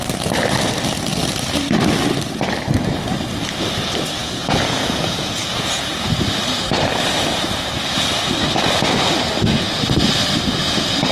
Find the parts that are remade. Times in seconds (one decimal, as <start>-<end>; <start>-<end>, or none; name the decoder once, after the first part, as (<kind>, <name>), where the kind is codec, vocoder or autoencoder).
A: 4.2-6.1 (vocoder, Vocos)